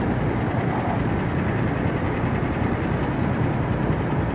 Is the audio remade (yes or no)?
yes